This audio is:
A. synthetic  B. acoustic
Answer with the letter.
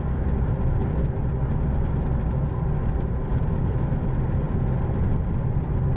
B